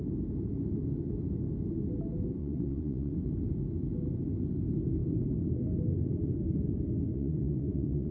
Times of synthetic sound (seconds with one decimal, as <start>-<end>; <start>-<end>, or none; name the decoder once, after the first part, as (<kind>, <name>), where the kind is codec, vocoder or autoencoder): 2.4-3.1 (vocoder, Vocos); 7.1-8.1